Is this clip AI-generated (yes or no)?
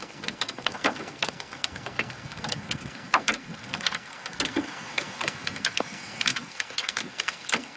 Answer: yes